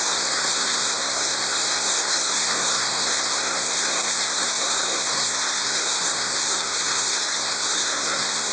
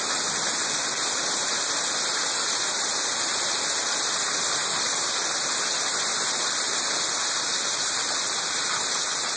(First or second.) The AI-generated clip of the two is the first